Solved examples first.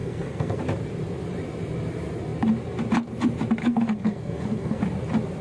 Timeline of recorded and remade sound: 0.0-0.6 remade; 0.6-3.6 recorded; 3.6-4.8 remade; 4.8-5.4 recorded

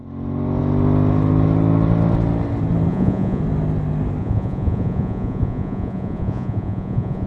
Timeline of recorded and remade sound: 0.0-2.9 recorded; 2.9-3.4 remade; 3.4-4.2 recorded; 4.2-7.3 remade

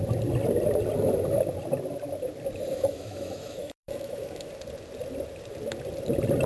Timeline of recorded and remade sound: 0.0-2.7 recorded; 2.7-4.5 remade; 4.5-6.5 recorded

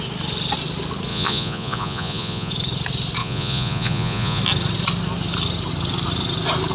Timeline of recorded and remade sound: 0.0-1.1 recorded; 1.1-2.5 remade; 2.5-3.2 recorded; 3.2-4.4 remade; 4.4-6.7 recorded

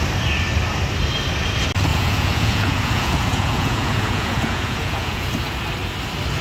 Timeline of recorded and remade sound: 0.0-1.9 recorded; 1.9-5.3 remade; 5.3-6.4 recorded

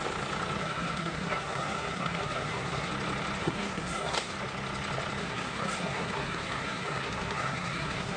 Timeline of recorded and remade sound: 0.0-0.6 recorded; 0.6-2.9 remade; 2.9-3.4 recorded; 3.4-4.3 remade; 4.3-5.2 recorded; 5.2-8.2 remade

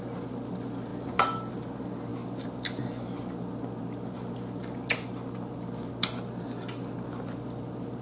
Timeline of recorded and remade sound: 0.0-8.0 recorded

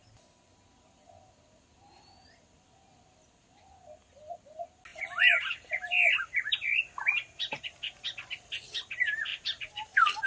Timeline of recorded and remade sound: 0.0-9.3 recorded; 9.3-10.3 remade